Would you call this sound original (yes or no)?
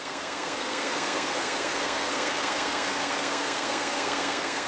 no